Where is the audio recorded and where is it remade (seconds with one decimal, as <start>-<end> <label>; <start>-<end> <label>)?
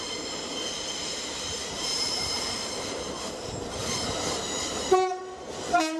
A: 0.0-1.6 recorded; 1.6-5.2 remade; 5.2-6.0 recorded